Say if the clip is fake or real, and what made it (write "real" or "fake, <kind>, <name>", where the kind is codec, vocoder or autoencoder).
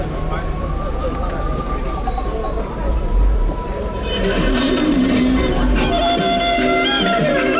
fake, vocoder, BigVGAN v2